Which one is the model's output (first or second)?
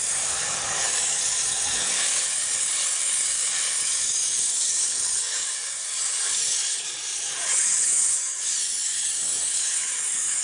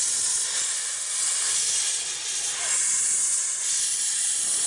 first